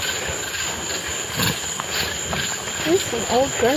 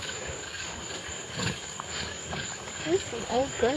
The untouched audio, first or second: first